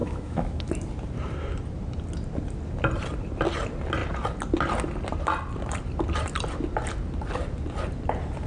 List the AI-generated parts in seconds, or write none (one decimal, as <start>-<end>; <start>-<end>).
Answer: 0.0-0.7